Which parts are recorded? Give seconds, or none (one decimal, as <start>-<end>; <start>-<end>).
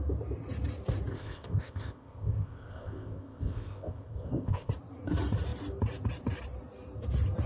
0.0-1.1; 4.7-7.5